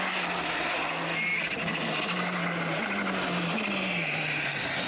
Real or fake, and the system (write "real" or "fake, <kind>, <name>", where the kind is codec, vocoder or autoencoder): real